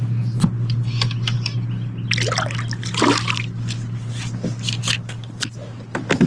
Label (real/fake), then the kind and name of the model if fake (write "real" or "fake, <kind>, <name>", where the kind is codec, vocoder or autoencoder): real